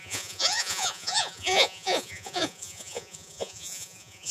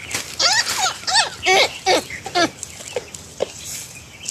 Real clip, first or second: second